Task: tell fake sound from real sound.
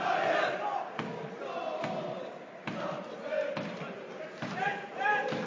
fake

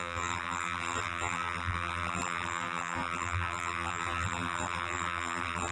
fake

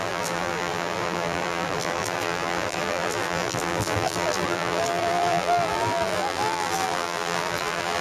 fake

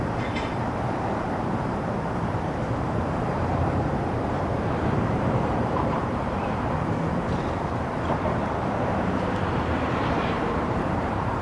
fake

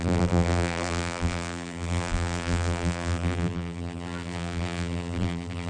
fake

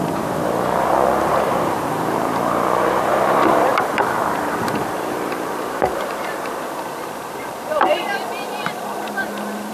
fake